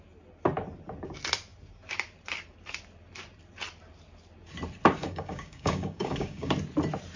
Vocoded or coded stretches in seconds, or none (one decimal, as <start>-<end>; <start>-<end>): 5.0-6.5